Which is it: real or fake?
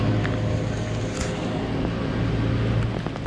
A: real